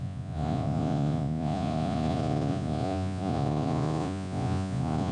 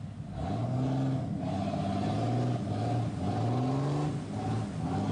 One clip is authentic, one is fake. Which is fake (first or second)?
first